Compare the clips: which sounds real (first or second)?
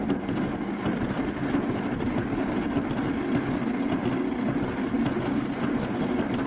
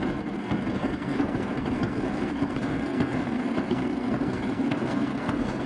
first